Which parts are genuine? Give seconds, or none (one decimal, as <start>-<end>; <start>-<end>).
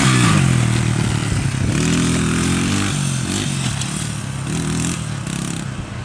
0.0-6.0